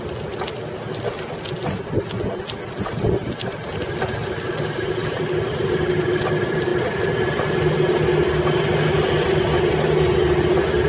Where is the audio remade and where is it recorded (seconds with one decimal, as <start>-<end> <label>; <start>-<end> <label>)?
0.0-10.9 recorded